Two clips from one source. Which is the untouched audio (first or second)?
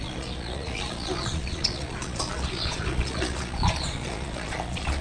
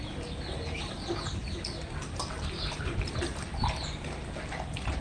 second